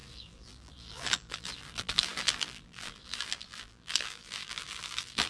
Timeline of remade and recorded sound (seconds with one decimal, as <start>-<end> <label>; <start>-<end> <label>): 0.0-5.3 remade